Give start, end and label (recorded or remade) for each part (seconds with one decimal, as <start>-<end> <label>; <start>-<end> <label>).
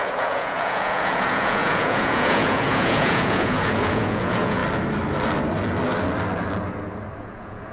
0.0-4.6 remade; 4.6-7.2 recorded; 7.2-7.7 remade